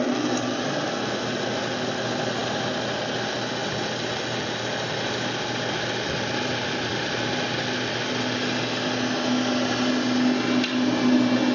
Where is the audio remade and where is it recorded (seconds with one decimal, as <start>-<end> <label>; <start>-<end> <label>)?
0.0-11.5 recorded